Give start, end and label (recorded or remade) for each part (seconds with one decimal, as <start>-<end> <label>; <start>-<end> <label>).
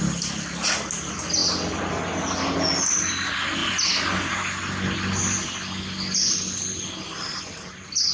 0.0-8.1 recorded